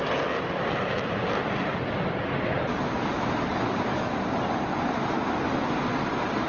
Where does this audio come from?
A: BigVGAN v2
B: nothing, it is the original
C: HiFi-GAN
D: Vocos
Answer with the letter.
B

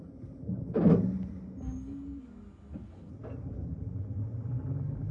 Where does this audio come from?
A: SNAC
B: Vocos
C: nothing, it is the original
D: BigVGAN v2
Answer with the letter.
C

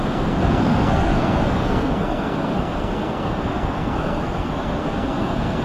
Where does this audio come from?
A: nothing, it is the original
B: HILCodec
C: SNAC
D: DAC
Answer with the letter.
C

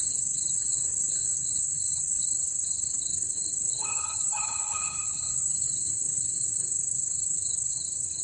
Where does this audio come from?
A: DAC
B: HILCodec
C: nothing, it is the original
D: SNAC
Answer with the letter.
B